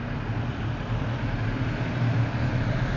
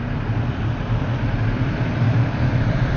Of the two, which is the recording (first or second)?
first